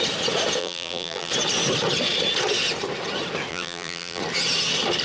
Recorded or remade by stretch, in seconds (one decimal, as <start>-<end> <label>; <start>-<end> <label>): 0.0-0.6 recorded; 0.6-1.3 remade; 1.3-3.5 recorded; 3.5-4.2 remade; 4.2-5.0 recorded